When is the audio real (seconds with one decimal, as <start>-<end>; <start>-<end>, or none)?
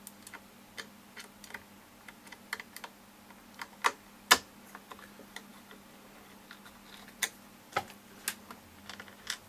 0.0-9.5